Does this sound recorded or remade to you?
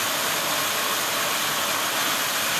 recorded